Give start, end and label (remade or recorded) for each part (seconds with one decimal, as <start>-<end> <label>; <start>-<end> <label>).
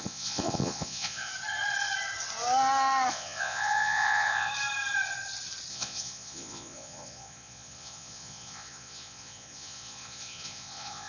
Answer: 0.0-1.3 remade; 1.3-3.1 recorded; 3.1-4.5 remade; 4.5-5.7 recorded; 5.7-11.1 remade